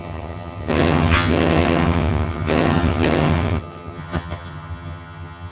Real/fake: fake